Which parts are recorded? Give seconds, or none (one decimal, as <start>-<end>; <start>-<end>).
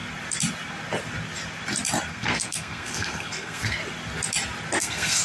0.0-2.1; 3.8-4.8